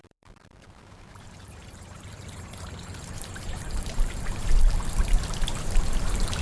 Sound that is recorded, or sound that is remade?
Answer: remade